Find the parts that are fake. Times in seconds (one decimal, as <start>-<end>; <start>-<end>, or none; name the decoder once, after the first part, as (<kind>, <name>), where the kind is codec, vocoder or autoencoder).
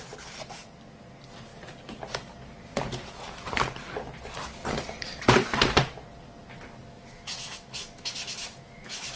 6.8-9.2 (autoencoder, DAC-VAE)